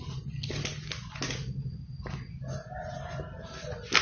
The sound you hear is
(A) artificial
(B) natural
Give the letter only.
B